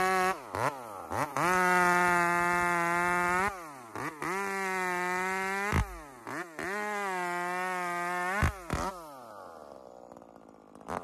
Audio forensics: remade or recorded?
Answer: recorded